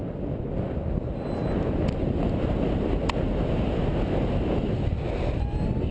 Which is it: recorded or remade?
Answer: recorded